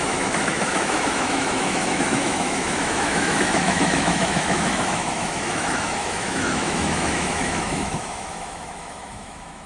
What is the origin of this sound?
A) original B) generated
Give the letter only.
B